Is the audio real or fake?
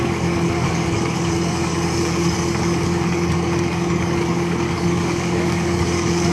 fake